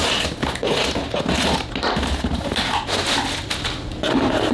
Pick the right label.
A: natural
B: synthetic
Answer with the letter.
A